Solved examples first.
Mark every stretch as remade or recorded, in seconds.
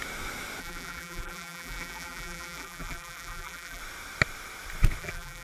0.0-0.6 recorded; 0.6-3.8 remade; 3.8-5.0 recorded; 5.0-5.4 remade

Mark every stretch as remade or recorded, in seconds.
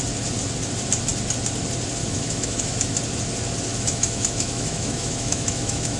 0.0-2.0 recorded; 2.0-3.0 remade; 3.0-3.7 recorded; 3.7-6.0 remade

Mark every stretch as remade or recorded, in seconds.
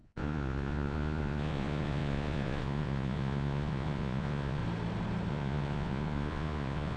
0.0-4.6 remade; 4.6-5.3 recorded; 5.3-7.0 remade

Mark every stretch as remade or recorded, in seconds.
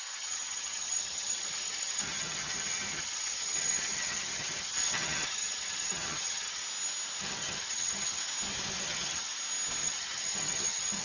0.0-6.6 remade; 6.6-7.2 recorded; 7.2-8.2 remade; 8.2-8.8 recorded; 8.8-9.3 remade; 9.3-9.8 recorded; 9.8-11.0 remade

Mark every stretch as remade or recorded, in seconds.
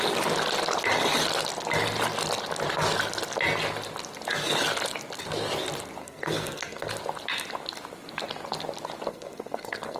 0.0-6.0 recorded; 6.0-6.9 remade; 6.9-9.1 recorded; 9.1-10.0 remade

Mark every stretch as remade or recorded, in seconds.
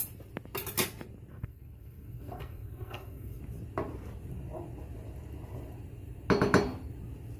0.0-1.3 recorded; 1.3-3.4 remade; 3.4-7.4 recorded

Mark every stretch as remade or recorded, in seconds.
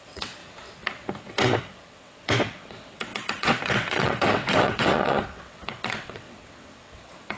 0.0-0.4 remade; 0.4-1.2 recorded; 1.2-7.4 remade